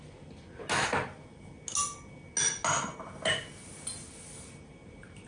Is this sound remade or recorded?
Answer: recorded